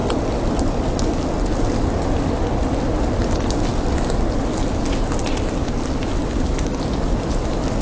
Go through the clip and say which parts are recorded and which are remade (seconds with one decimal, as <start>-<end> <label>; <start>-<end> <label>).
0.0-7.8 recorded